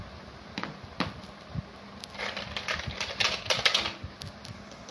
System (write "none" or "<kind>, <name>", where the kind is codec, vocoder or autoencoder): none